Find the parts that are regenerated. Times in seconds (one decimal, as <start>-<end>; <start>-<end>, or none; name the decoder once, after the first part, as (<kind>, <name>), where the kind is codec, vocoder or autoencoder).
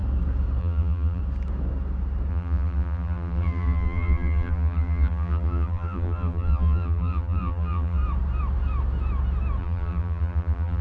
0.6-1.2 (vocoder, BigVGAN v2); 2.3-8.0; 9.6-10.8